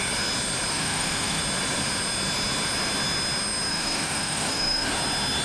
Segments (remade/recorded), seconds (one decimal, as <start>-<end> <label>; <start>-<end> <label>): 0.0-0.7 recorded; 0.7-1.4 remade; 1.4-3.7 recorded; 3.7-4.9 remade; 4.9-5.4 recorded